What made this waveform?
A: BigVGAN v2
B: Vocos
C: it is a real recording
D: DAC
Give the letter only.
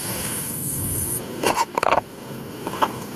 D